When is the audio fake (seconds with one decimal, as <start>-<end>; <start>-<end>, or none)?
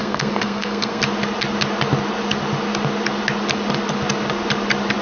0.0-1.0